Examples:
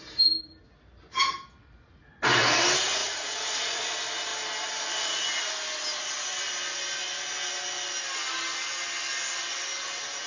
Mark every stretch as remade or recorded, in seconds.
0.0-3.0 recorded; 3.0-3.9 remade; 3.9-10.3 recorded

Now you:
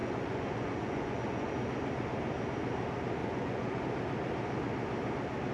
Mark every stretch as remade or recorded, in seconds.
0.0-1.5 remade; 1.5-3.2 recorded; 3.2-3.8 remade; 3.8-5.5 recorded